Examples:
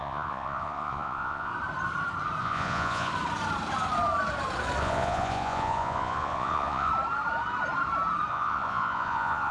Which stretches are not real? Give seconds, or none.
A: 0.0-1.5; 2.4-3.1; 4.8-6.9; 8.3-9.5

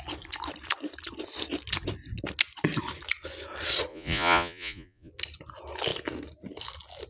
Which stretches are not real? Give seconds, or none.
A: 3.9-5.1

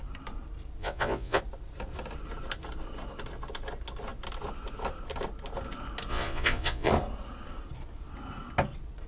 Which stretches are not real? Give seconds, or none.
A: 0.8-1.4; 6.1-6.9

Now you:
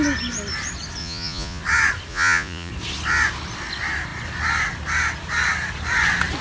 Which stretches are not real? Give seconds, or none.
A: 1.0-1.6; 2.1-2.7

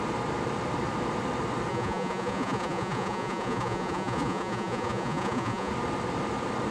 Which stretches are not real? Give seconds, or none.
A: 1.7-5.7

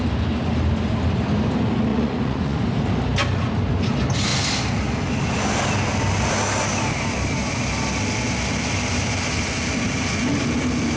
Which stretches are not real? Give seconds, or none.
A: 1.9-2.6

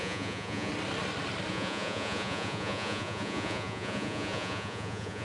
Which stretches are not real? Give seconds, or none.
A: 0.0-0.7; 1.5-5.2

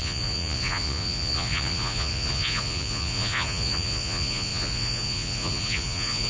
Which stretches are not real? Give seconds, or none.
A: 0.0-6.3